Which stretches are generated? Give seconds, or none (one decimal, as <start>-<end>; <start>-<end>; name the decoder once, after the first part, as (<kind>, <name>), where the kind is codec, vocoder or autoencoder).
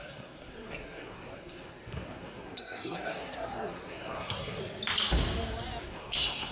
0.0-4.6 (codec, SNAC); 5.8-6.5